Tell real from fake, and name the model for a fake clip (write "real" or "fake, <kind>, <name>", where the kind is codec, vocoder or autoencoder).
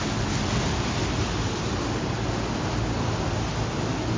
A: real